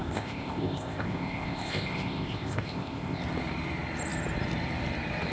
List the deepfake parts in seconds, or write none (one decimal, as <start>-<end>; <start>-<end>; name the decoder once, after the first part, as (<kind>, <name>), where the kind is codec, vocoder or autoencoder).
0.0-3.2 (codec, ZipCodec)